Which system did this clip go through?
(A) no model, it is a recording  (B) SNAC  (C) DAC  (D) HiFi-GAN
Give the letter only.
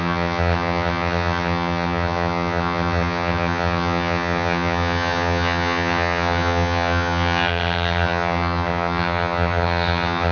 D